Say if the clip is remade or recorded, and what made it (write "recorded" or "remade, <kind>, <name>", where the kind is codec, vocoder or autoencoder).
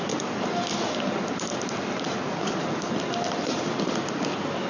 recorded